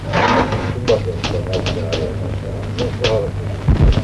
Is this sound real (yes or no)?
yes